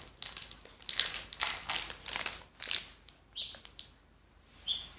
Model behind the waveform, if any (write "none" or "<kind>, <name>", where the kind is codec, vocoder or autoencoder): none